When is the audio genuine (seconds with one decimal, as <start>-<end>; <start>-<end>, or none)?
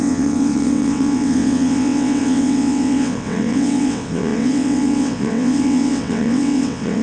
none